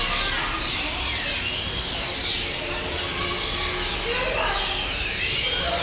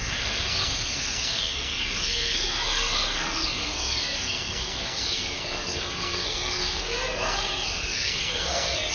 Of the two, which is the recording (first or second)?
first